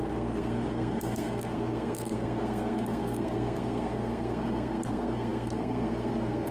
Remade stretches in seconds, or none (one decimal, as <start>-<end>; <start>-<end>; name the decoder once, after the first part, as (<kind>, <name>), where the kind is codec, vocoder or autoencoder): 0.0-6.5 (codec, SNAC)